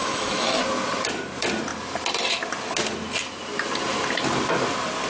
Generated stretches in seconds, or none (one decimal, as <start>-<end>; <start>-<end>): 0.0-0.6